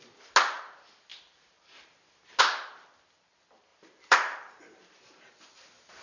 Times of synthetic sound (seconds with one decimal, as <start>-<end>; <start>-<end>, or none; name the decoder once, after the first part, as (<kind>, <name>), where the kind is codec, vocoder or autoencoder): 1.1-2.4 (vocoder, BigVGAN v2); 3.7-5.3